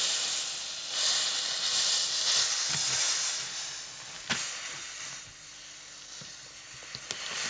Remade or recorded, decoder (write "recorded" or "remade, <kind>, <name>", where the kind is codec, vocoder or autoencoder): recorded